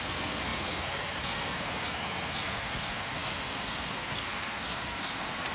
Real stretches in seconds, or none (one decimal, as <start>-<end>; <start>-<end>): none